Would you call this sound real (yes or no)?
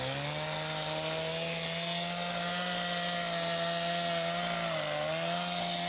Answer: yes